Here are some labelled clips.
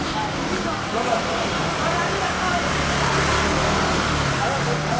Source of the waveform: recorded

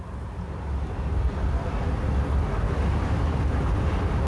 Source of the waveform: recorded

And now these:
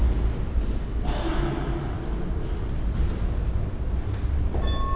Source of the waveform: recorded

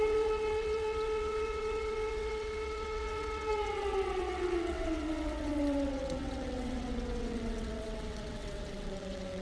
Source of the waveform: remade